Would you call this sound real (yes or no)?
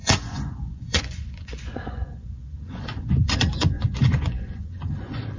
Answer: no